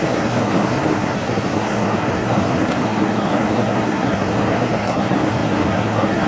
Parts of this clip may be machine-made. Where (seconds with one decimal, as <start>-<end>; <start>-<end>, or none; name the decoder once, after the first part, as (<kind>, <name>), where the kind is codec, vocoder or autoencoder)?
0.0-6.3 (codec, SNAC)